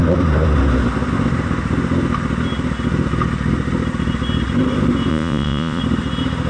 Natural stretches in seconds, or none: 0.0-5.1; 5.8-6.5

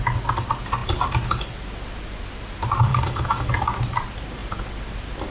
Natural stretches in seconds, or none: 0.0-2.9; 3.5-5.3

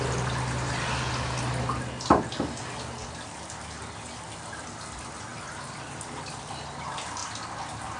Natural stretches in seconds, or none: 0.0-3.0; 4.2-5.3; 6.1-8.0

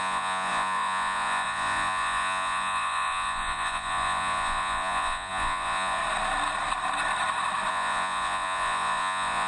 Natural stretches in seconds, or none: 6.0-7.7

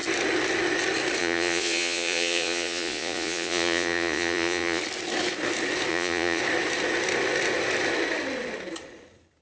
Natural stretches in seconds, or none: 0.0-1.2; 4.8-5.9; 6.4-9.4

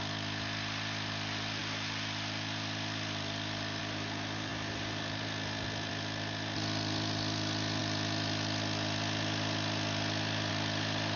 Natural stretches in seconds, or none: 0.0-11.2

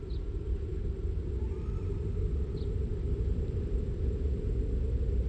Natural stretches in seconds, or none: 0.0-2.9; 4.3-5.3

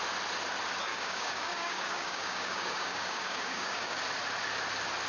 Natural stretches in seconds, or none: 0.0-0.9; 4.0-5.1